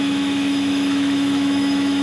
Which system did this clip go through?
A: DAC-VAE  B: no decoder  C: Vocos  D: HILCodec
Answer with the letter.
A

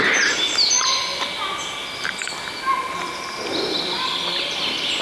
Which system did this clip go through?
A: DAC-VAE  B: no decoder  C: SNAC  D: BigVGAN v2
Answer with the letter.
B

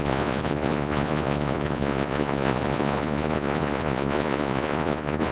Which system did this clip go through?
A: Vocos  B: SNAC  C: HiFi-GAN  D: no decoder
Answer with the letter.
A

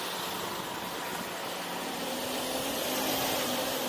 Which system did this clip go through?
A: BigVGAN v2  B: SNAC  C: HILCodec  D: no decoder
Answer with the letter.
D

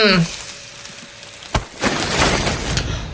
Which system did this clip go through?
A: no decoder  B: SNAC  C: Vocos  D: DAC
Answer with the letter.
A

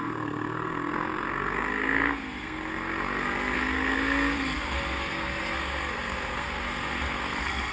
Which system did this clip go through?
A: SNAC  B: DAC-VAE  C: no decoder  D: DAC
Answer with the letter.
A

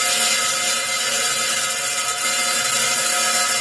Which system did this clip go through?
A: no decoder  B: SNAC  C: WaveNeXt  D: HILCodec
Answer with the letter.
A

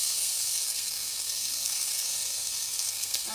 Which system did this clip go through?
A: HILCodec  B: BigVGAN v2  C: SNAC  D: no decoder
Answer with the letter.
C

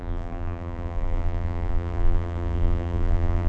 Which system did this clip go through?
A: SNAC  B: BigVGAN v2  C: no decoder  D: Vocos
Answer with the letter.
B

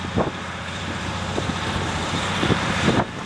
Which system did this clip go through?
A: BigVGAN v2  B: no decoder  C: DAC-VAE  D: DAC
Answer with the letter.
A